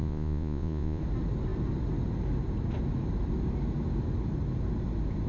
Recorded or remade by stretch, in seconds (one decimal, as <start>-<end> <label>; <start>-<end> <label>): 0.0-1.0 remade; 1.0-5.3 recorded

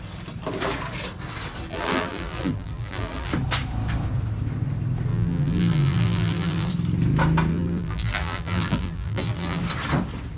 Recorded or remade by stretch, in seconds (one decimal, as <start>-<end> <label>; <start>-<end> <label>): 0.0-1.7 recorded; 1.7-3.3 remade; 3.3-5.1 recorded; 5.1-6.7 remade; 6.7-7.5 recorded; 7.5-9.6 remade; 9.6-10.4 recorded

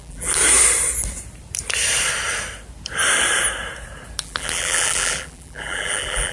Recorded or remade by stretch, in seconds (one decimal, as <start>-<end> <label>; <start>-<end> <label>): 0.0-0.4 remade; 0.4-4.2 recorded; 4.2-6.3 remade

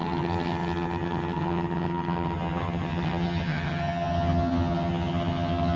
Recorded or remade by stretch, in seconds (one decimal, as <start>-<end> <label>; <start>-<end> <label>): 0.0-5.8 remade

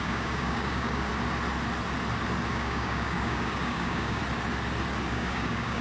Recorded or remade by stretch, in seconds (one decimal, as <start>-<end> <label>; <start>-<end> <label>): 0.0-1.1 remade; 1.1-2.5 recorded; 2.5-4.2 remade; 4.2-5.1 recorded; 5.1-5.8 remade

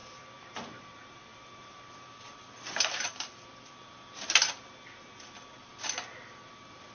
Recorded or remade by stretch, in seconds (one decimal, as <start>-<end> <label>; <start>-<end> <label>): 0.0-5.7 remade; 5.7-6.5 recorded; 6.5-6.9 remade